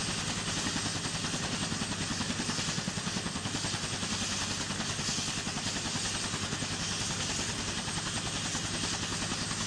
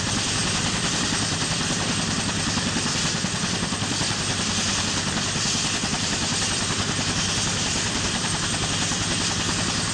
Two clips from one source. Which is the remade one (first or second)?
second